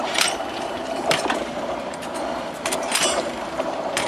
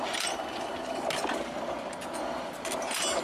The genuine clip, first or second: second